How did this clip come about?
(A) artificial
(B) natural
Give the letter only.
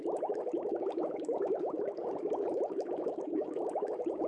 A